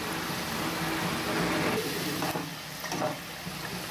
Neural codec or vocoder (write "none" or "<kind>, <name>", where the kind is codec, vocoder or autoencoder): none